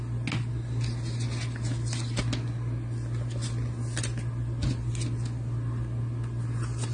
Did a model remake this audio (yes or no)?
no